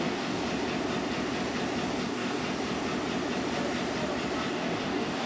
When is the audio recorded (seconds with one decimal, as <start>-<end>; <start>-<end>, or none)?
0.4-2.0; 2.4-4.5